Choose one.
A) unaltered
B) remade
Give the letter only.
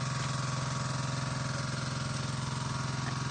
A